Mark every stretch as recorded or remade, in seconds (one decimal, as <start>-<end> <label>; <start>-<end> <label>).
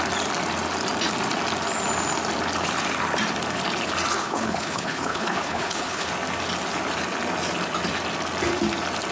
0.0-4.2 recorded; 4.2-6.1 remade; 6.1-9.1 recorded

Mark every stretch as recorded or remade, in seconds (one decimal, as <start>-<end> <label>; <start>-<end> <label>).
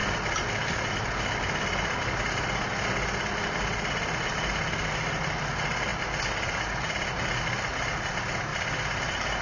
0.0-9.4 recorded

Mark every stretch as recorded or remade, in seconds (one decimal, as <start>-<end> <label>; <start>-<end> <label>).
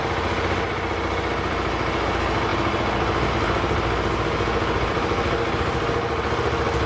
0.0-6.9 recorded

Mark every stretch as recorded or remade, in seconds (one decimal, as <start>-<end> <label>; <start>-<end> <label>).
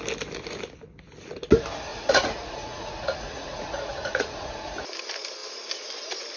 0.0-1.9 recorded; 1.9-4.6 remade; 4.6-6.4 recorded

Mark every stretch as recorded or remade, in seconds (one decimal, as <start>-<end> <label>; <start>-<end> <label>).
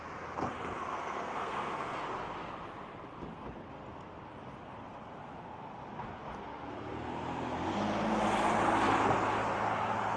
0.0-0.9 recorded; 0.9-2.0 remade; 2.0-10.2 recorded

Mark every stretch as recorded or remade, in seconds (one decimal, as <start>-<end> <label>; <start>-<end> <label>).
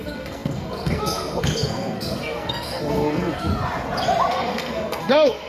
0.0-3.5 remade; 3.5-4.3 recorded; 4.3-5.5 remade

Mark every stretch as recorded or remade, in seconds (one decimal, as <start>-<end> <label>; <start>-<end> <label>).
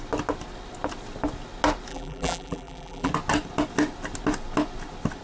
0.0-1.9 recorded; 1.9-3.1 remade; 3.1-5.2 recorded